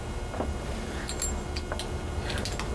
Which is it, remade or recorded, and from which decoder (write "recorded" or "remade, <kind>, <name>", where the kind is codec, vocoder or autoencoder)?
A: recorded